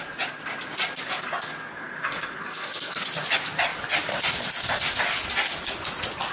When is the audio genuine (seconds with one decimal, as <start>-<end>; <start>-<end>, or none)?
0.0-1.7; 3.0-6.3